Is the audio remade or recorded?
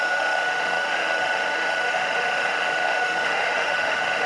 remade